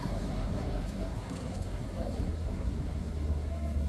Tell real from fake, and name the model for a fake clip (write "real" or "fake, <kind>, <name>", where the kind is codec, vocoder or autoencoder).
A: fake, codec, SNAC